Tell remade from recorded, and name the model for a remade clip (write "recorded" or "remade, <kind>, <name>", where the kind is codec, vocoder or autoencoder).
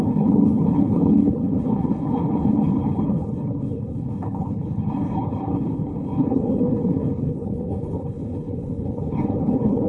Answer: remade, codec, HILCodec